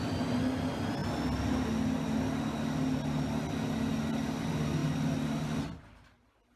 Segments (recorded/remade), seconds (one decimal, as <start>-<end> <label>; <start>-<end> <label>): 0.0-6.6 recorded